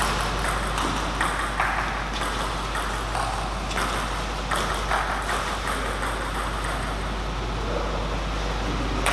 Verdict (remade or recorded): recorded